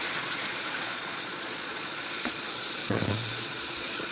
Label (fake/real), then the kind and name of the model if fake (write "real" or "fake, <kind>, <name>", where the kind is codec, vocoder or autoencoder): fake, vocoder, Vocos